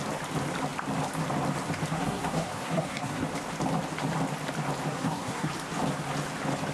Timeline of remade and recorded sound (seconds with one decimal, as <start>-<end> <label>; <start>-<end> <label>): 0.0-1.9 recorded; 1.9-3.2 remade; 3.2-4.9 recorded; 4.9-5.5 remade; 5.5-6.7 recorded